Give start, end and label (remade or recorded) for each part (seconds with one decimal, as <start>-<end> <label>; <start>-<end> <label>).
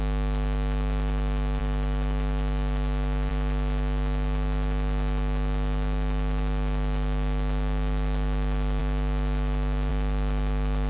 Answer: 0.0-10.9 remade